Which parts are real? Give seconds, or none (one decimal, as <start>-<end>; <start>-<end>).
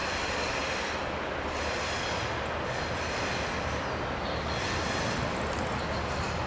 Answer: 0.0-6.5